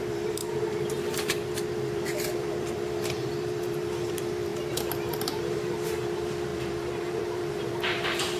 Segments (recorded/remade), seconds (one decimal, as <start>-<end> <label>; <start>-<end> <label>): 0.0-8.4 remade

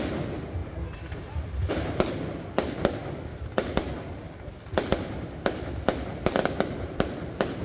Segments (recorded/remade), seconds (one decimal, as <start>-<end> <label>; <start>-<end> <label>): 0.0-7.6 recorded

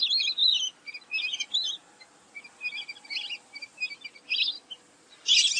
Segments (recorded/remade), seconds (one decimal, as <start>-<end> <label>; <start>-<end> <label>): 0.0-0.4 recorded; 0.4-1.0 remade; 1.0-5.6 recorded